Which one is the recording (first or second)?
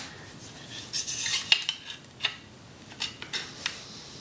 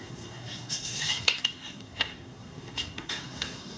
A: first